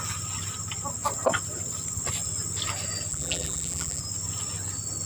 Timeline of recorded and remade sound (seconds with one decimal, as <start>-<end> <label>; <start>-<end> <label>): 0.0-3.1 recorded; 3.1-4.0 remade; 4.0-5.1 recorded